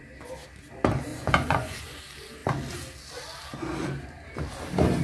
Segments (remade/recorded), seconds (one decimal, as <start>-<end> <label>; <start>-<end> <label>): 0.0-1.1 recorded; 1.1-2.0 remade; 2.0-5.0 recorded